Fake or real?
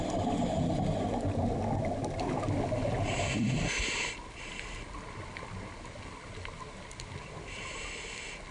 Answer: real